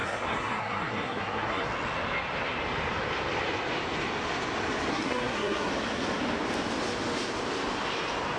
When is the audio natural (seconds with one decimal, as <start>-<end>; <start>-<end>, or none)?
1.7-4.9; 5.7-8.4